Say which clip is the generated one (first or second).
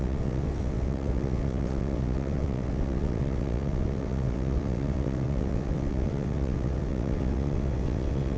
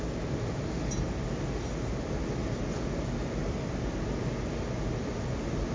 first